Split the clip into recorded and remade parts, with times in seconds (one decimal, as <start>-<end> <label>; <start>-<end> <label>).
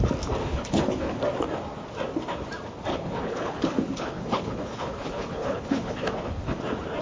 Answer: 0.0-0.4 recorded; 0.4-1.2 remade; 1.2-2.9 recorded; 2.9-6.6 remade; 6.6-7.0 recorded